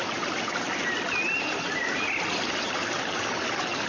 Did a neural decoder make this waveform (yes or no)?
no